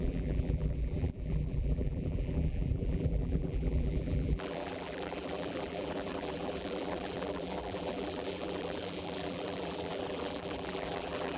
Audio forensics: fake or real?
fake